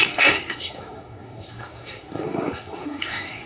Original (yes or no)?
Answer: no